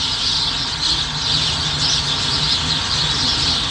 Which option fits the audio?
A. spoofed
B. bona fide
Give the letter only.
B